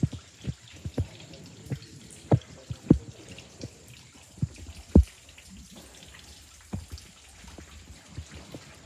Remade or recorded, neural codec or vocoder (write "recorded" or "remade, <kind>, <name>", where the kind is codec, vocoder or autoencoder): recorded